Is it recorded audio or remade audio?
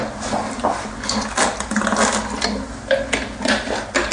recorded